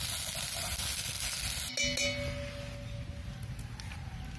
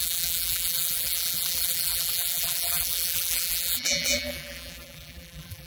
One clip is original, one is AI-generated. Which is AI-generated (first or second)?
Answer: second